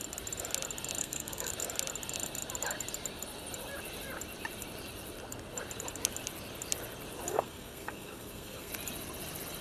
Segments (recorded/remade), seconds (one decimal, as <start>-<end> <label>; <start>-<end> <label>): 0.0-1.0 recorded; 1.0-1.5 remade; 1.5-7.3 recorded; 7.3-8.7 remade; 8.7-9.6 recorded